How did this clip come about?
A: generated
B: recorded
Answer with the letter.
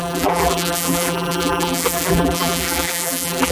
A